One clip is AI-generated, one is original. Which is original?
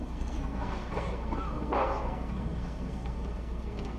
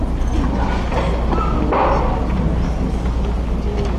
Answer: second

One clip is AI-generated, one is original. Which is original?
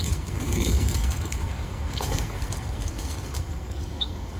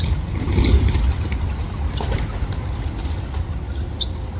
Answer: second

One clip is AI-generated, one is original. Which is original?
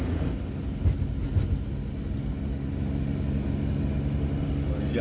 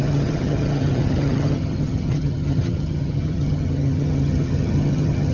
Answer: first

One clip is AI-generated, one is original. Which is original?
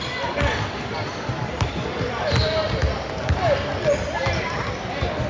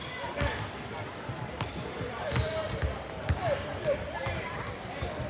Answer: first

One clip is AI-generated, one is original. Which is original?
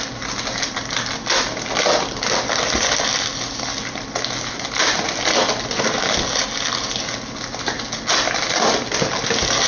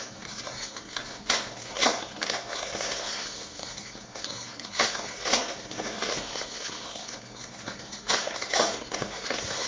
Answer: first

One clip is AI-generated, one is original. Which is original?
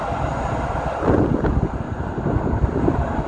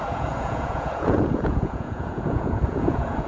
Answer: first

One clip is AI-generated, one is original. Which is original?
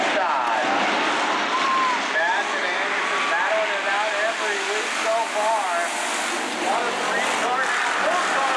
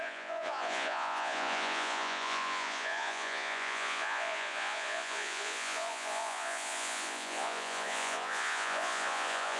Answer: first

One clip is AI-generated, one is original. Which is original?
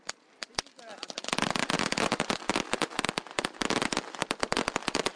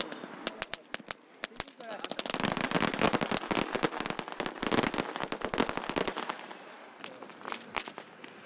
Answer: second